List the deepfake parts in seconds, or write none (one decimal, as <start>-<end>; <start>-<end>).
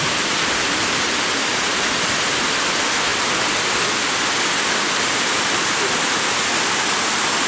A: none